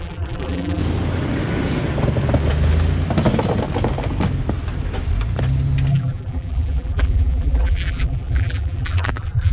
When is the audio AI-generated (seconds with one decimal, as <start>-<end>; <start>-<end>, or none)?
0.0-0.8; 5.9-9.5